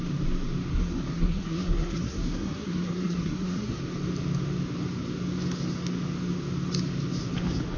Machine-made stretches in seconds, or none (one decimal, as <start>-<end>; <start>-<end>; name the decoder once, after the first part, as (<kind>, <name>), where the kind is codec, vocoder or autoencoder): 0.7-3.8 (codec, SNAC)